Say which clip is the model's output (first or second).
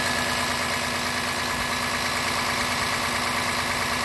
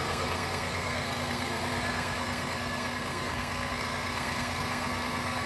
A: second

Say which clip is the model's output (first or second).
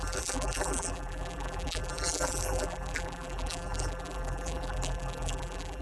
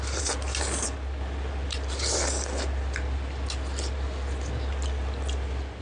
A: first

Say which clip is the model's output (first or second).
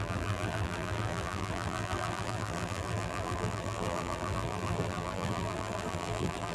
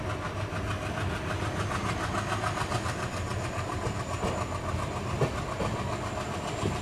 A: first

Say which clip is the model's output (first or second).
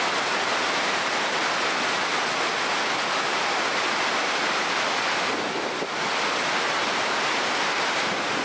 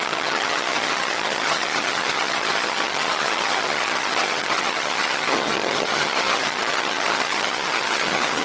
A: second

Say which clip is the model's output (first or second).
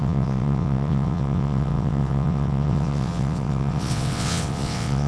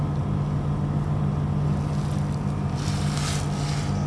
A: first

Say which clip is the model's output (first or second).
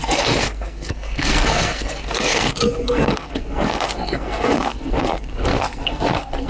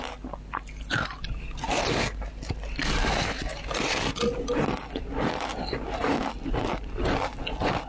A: first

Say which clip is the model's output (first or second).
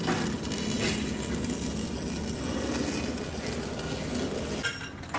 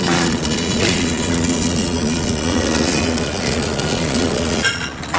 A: second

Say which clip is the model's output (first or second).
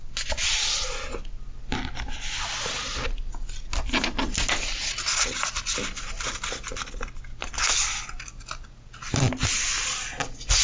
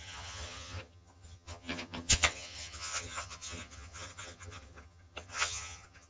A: second